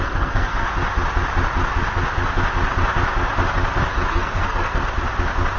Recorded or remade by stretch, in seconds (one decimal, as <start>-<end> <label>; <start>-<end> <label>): 0.0-0.7 remade; 0.7-4.1 recorded; 4.1-4.8 remade; 4.8-5.6 recorded